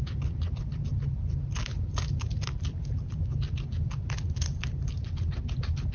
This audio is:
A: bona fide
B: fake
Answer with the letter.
A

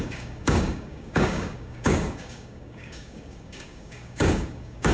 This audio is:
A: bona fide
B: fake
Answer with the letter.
B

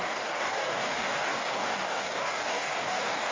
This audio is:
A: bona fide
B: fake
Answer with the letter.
B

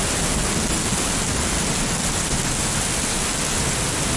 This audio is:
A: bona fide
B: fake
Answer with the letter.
A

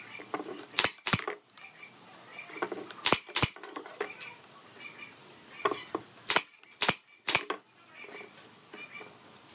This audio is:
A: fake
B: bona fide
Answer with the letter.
B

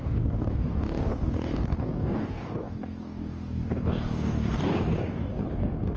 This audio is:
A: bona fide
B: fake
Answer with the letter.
B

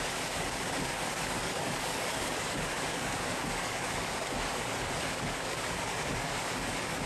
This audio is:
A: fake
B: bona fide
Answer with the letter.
A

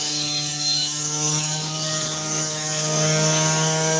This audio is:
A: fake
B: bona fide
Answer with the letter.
A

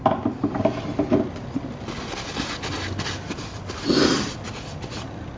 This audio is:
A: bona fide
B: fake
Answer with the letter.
A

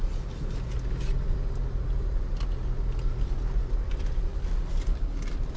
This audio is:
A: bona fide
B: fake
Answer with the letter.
A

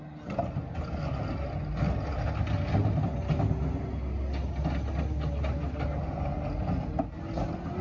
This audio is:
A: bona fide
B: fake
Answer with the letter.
A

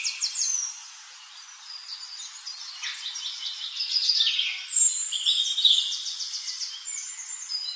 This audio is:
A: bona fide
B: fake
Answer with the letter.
A